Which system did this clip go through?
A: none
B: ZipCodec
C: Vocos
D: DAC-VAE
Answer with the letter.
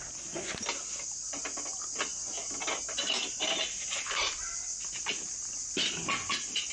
A